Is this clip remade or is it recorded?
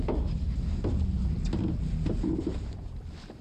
recorded